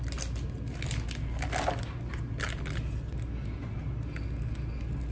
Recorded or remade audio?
recorded